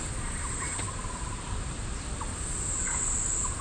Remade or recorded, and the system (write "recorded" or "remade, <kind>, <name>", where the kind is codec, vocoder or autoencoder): recorded